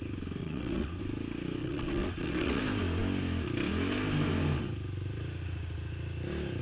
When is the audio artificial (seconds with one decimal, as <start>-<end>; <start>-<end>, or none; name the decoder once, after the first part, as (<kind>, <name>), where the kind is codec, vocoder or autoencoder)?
0.4-1.0 (vocoder, WaveNeXt); 1.6-2.6